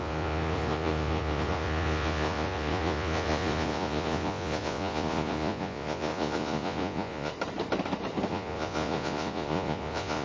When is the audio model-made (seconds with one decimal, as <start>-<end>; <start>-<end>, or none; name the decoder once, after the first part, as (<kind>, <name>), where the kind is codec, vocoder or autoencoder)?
0.0-7.3 (vocoder, Vocos); 8.3-10.2